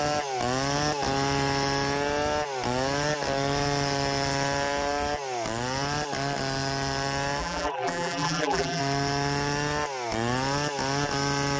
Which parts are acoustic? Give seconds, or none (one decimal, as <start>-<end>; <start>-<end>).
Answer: 0.0-7.4; 8.8-11.6